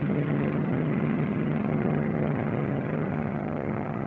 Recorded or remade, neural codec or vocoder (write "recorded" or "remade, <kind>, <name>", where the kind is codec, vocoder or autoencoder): remade, vocoder, HiFi-GAN